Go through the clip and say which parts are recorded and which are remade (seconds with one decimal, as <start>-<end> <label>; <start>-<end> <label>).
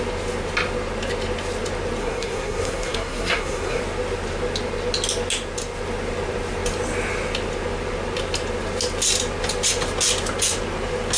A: 0.0-2.0 recorded; 2.0-3.8 remade; 3.8-11.2 recorded